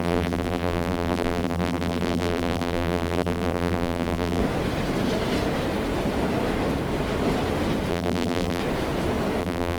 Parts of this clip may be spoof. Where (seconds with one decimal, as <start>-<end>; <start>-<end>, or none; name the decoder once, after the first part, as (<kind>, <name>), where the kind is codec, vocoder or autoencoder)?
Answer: 0.0-4.4 (vocoder, BigVGAN v2); 7.9-8.6; 9.4-9.8